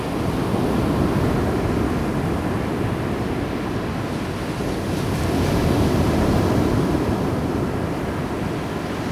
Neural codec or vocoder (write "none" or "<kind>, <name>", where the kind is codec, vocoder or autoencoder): none